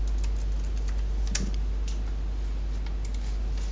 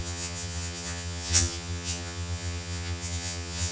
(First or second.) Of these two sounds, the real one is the first